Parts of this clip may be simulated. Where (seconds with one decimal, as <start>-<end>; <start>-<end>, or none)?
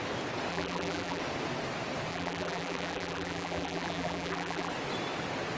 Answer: 0.5-1.2; 2.1-4.7